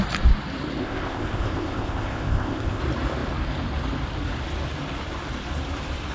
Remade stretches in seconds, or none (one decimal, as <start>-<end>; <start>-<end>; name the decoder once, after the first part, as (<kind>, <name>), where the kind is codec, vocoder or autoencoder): 0.8-2.8 (codec, ZipCodec)